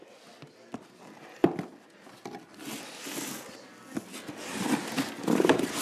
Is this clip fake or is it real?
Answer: real